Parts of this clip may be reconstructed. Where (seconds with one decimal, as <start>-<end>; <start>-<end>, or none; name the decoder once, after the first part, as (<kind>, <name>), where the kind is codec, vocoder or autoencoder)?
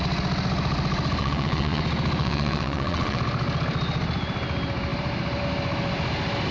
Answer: 1.2-1.8 (vocoder, WaveNeXt); 2.2-3.2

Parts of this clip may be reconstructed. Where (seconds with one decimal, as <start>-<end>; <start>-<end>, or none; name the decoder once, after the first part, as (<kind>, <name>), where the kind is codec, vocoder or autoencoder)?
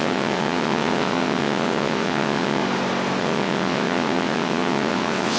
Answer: 0.0-2.6 (vocoder, WaveNeXt); 3.2-5.4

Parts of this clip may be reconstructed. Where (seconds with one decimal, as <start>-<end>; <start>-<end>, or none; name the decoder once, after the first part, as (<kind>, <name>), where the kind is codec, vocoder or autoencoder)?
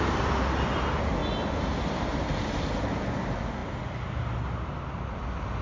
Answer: none